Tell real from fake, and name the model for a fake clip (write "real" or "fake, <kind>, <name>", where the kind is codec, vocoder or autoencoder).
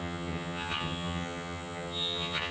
fake, vocoder, HiFi-GAN